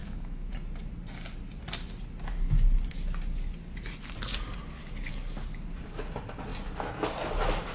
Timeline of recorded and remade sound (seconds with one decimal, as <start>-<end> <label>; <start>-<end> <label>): 0.0-0.5 remade; 0.5-7.7 recorded